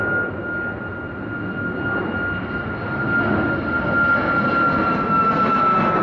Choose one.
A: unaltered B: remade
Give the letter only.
A